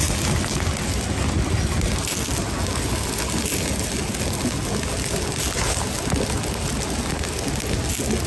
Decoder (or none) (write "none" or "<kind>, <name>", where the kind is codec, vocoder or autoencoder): none